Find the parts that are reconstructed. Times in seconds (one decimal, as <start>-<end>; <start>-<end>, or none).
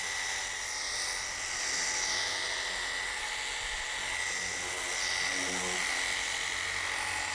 none